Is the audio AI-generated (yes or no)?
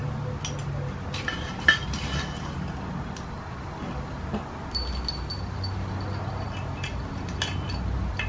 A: no